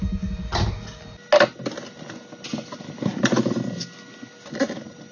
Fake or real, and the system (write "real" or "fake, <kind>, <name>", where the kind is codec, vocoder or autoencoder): real